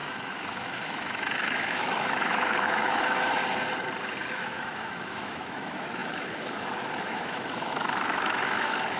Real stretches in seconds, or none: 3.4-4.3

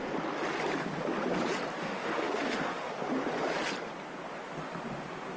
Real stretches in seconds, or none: 0.0-1.8; 2.9-5.4

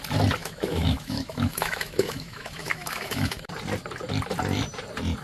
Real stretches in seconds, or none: 0.0-0.4; 3.5-5.2

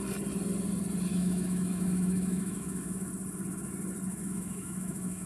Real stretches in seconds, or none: 0.0-1.1; 3.1-4.1

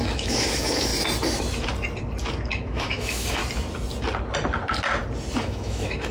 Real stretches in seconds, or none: 0.9-2.5; 3.4-5.4